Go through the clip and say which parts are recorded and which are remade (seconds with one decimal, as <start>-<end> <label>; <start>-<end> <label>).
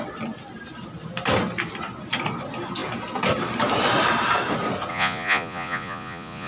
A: 0.0-4.9 recorded; 4.9-6.5 remade